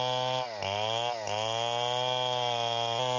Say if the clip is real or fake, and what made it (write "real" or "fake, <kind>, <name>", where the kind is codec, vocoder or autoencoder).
real